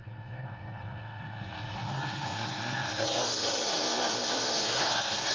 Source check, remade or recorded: remade